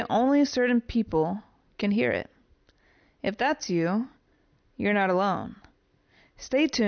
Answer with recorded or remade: recorded